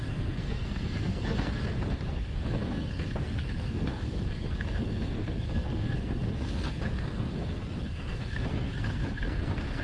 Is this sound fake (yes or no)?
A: yes